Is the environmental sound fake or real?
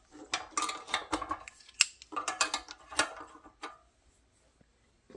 real